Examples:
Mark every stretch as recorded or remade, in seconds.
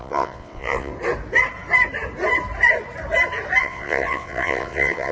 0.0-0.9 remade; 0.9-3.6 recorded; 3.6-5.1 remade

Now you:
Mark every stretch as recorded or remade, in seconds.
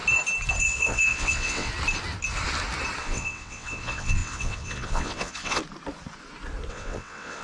0.0-0.6 recorded; 0.6-1.7 remade; 1.7-3.0 recorded; 3.0-5.6 remade; 5.6-6.7 recorded; 6.7-7.4 remade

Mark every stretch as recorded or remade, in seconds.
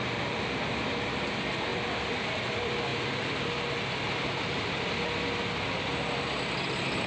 0.0-7.1 recorded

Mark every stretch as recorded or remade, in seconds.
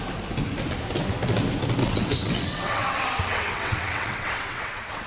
0.0-1.8 recorded; 1.8-5.1 remade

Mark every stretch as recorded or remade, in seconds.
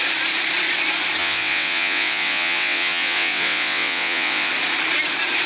0.0-1.2 recorded; 1.2-4.5 remade; 4.5-5.5 recorded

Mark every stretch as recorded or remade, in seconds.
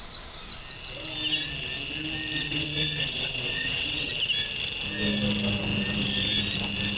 0.0-2.4 recorded; 2.4-4.1 remade; 4.1-7.0 recorded